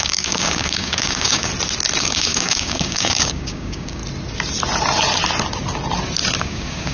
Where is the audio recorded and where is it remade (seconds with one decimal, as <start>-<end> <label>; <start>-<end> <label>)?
0.0-1.5 remade; 1.5-2.0 recorded; 2.0-4.0 remade; 4.0-6.4 recorded; 6.4-6.9 remade